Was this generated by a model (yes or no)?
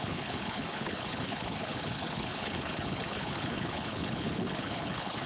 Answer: yes